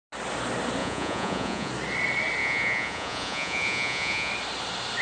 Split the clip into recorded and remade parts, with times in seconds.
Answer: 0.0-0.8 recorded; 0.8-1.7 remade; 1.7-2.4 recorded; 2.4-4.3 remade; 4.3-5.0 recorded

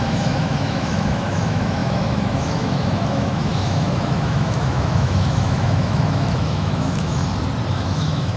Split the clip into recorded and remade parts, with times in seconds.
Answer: 0.0-7.2 remade; 7.2-7.7 recorded; 7.7-8.4 remade

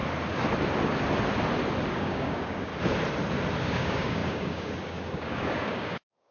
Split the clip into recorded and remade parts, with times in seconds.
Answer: 0.0-1.9 recorded; 1.9-2.7 remade; 2.7-3.6 recorded; 3.6-6.3 remade